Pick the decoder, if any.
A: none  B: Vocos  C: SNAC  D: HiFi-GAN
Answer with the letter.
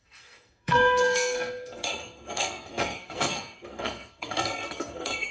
C